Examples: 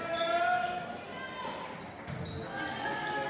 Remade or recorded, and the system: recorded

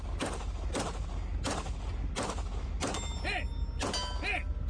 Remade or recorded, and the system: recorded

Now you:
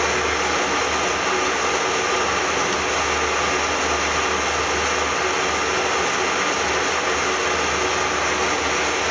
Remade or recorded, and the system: recorded